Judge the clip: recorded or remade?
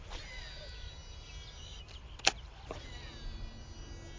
recorded